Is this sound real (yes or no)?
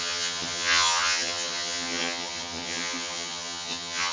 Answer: no